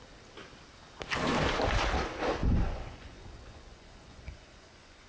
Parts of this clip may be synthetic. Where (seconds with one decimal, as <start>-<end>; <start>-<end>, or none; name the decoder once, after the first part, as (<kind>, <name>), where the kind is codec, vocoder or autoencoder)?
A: 2.4-5.1 (vocoder, Vocos)

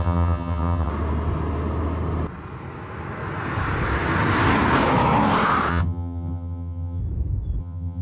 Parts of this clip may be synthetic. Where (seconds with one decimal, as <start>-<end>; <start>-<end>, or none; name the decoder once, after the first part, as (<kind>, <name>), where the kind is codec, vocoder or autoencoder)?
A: 0.0-0.9 (vocoder, HiFi-GAN); 5.7-7.0; 7.6-8.0